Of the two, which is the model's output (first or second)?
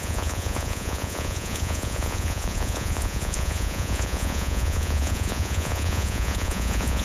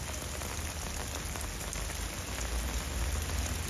first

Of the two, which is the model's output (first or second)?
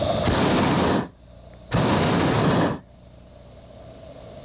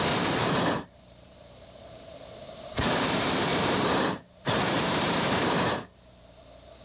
second